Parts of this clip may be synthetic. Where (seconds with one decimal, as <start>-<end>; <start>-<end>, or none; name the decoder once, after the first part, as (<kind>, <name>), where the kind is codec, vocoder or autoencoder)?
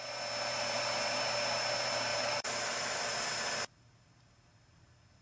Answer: 2.1-3.1 (vocoder, BigVGAN v2)